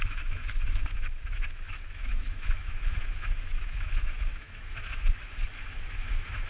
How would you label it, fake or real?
fake